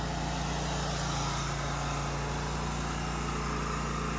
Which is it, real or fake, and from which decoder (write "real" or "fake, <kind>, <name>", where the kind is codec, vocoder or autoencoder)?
real